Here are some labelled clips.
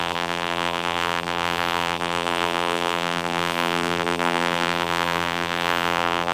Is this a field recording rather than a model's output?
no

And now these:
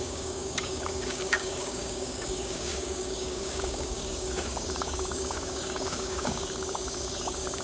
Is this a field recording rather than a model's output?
no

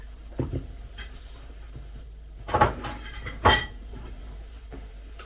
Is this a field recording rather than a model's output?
no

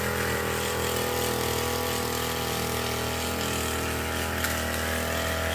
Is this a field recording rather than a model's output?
yes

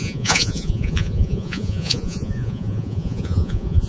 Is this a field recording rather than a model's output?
no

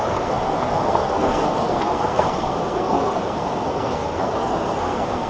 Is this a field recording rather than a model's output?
no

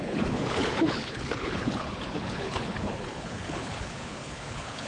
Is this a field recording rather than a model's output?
no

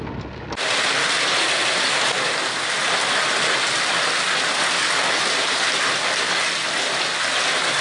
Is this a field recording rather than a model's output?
yes